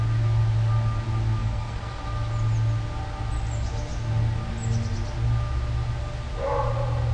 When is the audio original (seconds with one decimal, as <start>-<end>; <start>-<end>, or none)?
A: 0.0-1.4; 2.0-7.1